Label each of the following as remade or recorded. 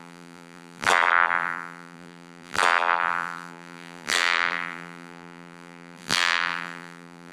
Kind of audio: remade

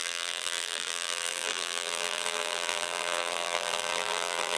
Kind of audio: remade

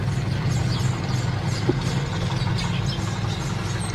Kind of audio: recorded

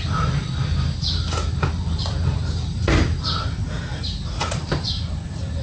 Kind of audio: recorded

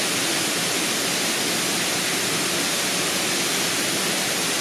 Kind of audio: recorded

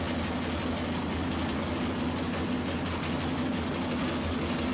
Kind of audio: recorded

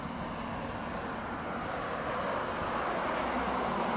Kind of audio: recorded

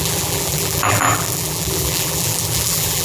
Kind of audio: remade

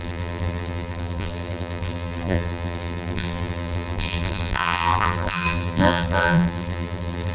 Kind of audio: remade